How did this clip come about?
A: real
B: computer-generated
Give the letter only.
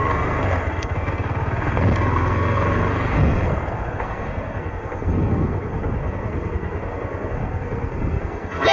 B